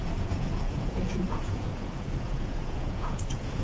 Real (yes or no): no